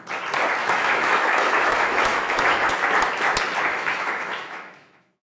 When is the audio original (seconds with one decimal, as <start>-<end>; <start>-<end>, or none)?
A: 0.0-0.6; 2.7-3.7